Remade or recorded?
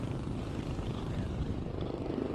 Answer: remade